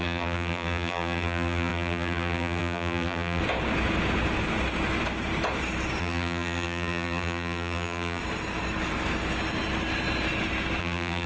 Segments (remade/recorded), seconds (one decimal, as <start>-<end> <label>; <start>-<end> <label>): 0.0-3.4 remade; 3.4-6.0 recorded; 6.0-8.2 remade; 8.2-10.8 recorded; 10.8-11.3 remade